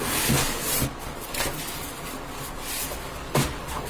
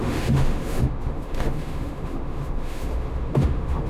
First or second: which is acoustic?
first